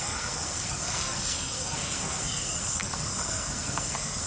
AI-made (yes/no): yes